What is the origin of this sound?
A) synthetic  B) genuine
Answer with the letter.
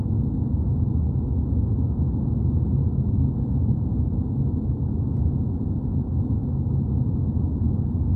B